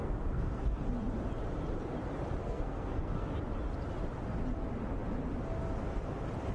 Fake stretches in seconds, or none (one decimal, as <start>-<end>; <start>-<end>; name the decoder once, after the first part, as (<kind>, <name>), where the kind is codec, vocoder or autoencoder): 0.0-0.8 (codec, SNAC); 2.4-3.4